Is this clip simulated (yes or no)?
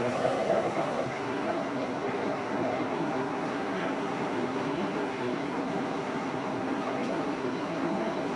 yes